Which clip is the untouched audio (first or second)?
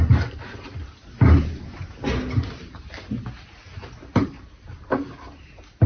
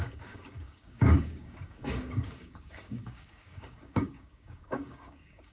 first